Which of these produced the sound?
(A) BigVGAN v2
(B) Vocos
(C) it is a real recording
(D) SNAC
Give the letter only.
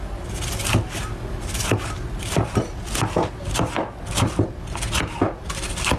C